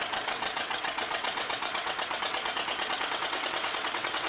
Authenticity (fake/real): fake